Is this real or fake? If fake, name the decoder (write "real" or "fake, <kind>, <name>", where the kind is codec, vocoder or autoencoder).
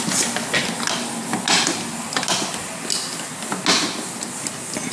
real